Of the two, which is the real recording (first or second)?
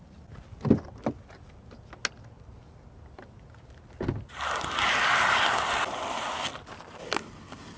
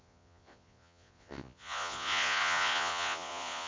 first